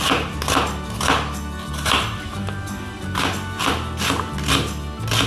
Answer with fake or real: real